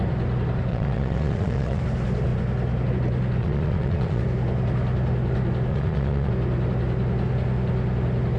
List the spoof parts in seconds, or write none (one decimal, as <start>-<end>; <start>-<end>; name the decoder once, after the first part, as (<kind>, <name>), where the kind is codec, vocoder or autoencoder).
0.7-1.8 (vocoder, Vocos); 3.4-4.2; 5.7-6.3